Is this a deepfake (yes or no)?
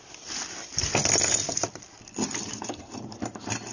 no